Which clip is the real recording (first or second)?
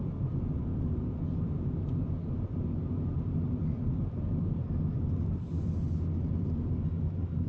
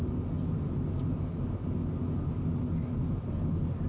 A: second